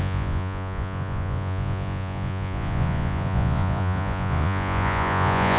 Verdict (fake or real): fake